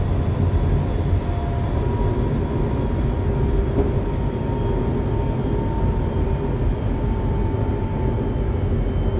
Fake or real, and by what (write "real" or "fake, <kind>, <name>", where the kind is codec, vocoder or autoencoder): real